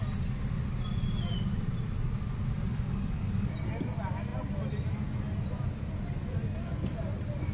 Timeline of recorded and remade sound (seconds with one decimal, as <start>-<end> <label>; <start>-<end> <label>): 0.0-2.7 recorded; 2.7-3.5 remade; 3.5-7.5 recorded